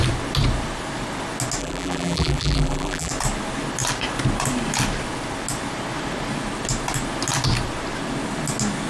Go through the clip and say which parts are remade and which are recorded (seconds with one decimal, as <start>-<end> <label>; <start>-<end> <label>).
0.0-1.6 recorded; 1.6-3.1 remade; 3.1-8.9 recorded